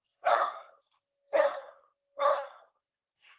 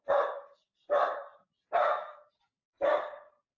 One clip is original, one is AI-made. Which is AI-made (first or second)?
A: first